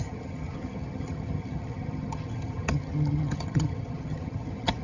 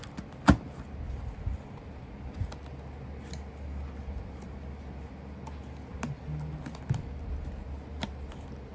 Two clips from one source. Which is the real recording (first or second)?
second